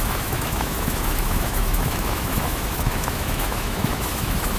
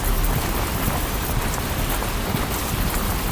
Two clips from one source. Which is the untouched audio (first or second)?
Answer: second